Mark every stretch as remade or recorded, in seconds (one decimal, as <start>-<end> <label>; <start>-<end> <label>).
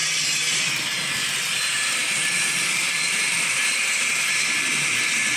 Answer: 0.0-5.4 remade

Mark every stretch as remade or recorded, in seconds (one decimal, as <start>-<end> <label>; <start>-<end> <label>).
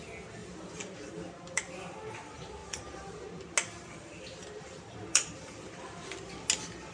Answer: 0.0-0.4 recorded; 0.4-1.7 remade; 1.7-2.6 recorded; 2.6-3.4 remade; 3.4-4.4 recorded; 4.4-5.4 remade; 5.4-6.9 recorded